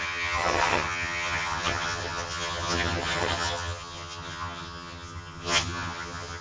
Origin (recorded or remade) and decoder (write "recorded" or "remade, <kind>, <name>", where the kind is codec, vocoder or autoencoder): remade, vocoder, HiFi-GAN